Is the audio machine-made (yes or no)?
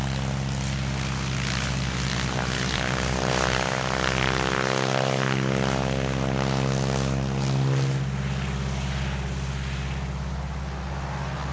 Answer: no